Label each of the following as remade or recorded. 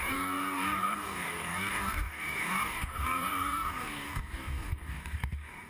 remade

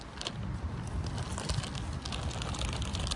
recorded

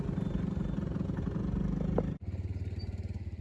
recorded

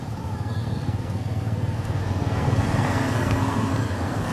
remade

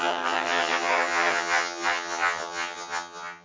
remade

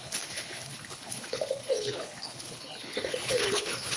remade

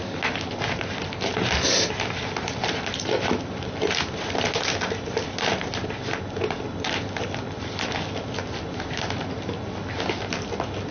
recorded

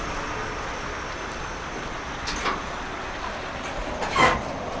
recorded